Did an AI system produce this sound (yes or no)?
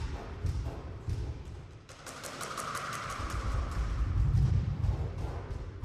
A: yes